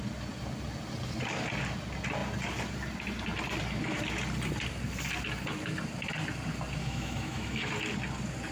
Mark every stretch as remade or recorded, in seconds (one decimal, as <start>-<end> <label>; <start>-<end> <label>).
0.0-6.8 recorded; 6.8-7.7 remade; 7.7-8.5 recorded